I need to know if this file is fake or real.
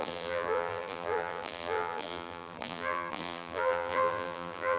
fake